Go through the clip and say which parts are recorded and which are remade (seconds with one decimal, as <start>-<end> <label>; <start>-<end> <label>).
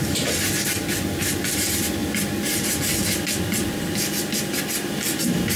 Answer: 0.0-5.6 recorded